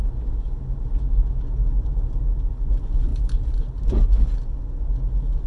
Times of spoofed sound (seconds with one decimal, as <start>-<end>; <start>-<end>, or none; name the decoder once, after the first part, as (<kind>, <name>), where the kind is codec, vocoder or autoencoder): 0.0-0.9 (vocoder, BigVGAN v2); 1.6-2.2; 3.1-3.7